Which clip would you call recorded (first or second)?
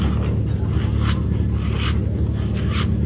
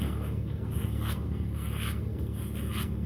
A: first